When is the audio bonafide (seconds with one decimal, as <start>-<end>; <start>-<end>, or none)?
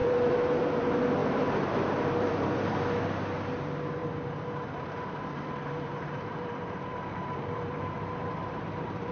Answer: 0.7-1.2; 3.0-4.0